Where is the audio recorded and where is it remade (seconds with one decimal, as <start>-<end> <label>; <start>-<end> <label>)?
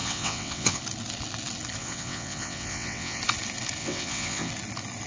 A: 0.0-0.8 remade; 0.8-1.8 recorded; 1.8-3.2 remade; 3.2-3.8 recorded; 3.8-4.5 remade; 4.5-5.1 recorded